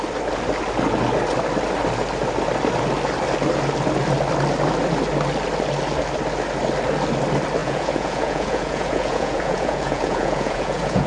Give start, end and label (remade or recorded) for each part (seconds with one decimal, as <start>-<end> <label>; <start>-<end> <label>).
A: 0.0-7.6 recorded; 7.6-11.1 remade